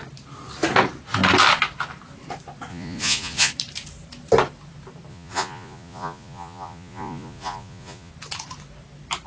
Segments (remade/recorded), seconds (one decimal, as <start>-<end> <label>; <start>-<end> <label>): 0.0-2.7 recorded; 2.7-3.5 remade; 3.5-5.1 recorded; 5.1-8.1 remade; 8.1-9.3 recorded

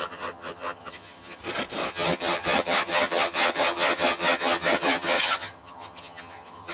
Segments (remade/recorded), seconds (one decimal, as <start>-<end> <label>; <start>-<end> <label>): 0.0-1.4 remade; 1.4-1.9 recorded; 1.9-6.7 remade

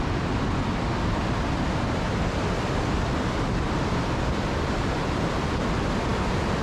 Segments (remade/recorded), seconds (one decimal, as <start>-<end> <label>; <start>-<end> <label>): 0.0-6.6 recorded

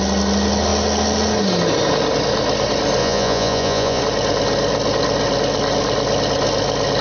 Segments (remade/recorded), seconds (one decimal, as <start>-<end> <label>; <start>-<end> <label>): 0.0-3.0 recorded; 3.0-4.0 remade; 4.0-7.0 recorded

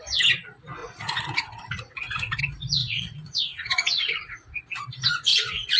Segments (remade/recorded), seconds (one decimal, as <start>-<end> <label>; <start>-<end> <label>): 0.0-0.8 recorded; 0.8-2.4 remade; 2.4-2.8 recorded; 2.8-4.6 remade; 4.6-5.3 recorded; 5.3-5.8 remade